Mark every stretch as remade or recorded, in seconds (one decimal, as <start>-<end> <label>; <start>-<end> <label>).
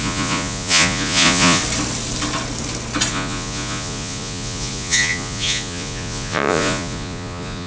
0.0-1.6 remade; 1.6-3.1 recorded; 3.1-7.7 remade